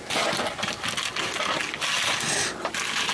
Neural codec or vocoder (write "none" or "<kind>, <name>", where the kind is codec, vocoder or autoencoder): none